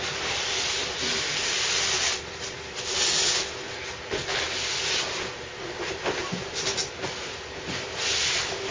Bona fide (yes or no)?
yes